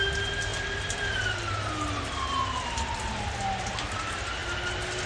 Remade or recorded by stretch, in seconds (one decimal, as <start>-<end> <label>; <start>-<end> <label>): 0.0-5.1 recorded